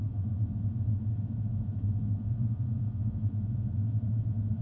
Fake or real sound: fake